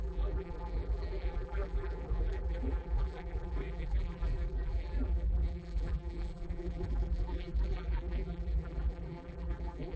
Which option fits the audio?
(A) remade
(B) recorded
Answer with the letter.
A